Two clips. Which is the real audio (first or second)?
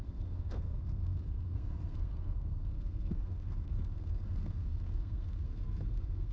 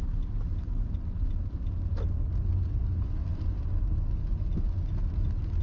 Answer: second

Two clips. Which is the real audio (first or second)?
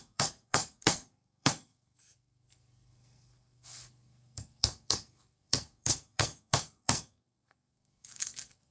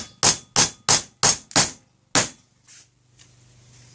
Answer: second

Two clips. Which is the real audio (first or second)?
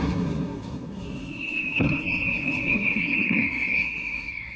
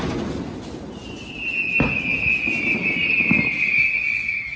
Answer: second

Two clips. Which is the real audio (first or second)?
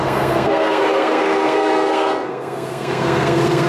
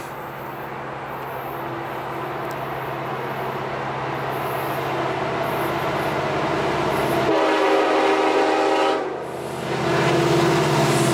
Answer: second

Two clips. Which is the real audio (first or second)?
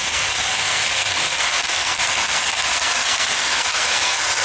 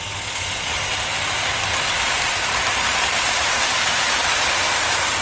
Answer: second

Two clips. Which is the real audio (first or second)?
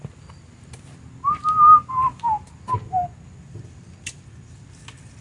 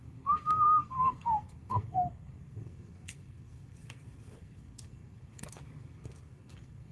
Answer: first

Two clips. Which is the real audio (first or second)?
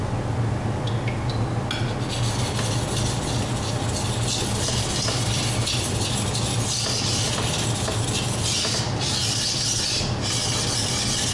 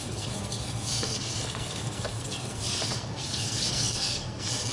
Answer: first